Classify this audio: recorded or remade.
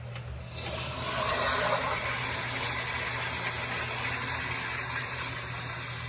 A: recorded